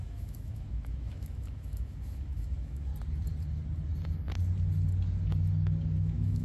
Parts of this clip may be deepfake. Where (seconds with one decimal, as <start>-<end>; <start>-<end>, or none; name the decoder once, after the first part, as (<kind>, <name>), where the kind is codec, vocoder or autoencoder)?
0.0-2.9 (autoencoder, DAC-VAE); 6.0-6.4